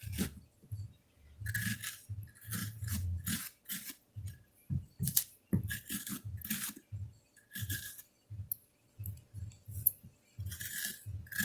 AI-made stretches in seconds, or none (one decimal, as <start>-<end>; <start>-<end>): 2.6-3.4